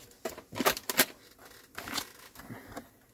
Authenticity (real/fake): real